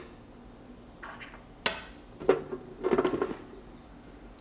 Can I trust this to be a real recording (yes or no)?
yes